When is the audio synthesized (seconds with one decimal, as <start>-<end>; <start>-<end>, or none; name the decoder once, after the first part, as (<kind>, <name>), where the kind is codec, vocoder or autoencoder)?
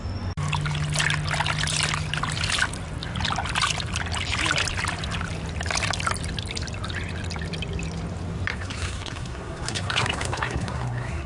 8.5-11.3 (codec, SNAC)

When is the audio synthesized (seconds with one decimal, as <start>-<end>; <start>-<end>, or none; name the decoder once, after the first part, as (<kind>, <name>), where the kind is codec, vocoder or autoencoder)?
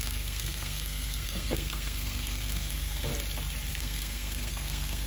0.0-3.1 (codec, SNAC); 3.7-5.1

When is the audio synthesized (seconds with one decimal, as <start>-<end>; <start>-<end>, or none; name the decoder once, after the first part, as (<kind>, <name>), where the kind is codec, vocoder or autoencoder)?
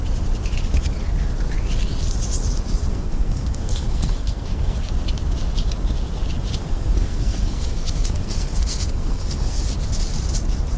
2.9-4.9 (codec, SNAC); 6.6-9.6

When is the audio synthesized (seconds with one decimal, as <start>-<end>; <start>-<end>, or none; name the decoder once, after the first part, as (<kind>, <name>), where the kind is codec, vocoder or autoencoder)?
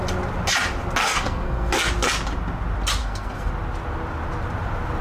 1.0-1.7 (codec, SNAC); 3.0-3.5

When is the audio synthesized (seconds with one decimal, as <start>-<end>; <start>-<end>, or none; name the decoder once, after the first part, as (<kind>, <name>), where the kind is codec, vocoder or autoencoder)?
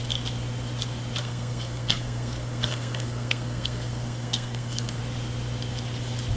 1.2-5.0 (codec, SNAC)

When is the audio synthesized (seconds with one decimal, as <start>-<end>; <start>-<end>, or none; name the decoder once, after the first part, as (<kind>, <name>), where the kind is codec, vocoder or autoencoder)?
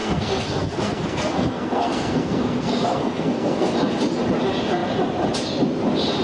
0.0-3.7 (codec, SNAC)